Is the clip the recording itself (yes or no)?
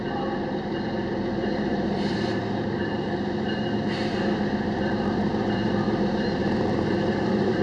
no